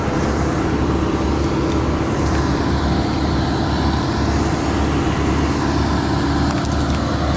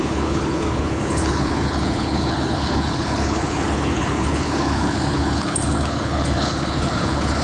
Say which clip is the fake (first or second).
second